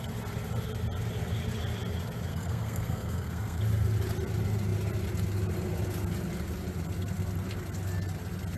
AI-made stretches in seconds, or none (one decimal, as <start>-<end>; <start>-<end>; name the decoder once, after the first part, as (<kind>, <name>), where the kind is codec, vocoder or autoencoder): 2.3-3.6 (codec, SNAC)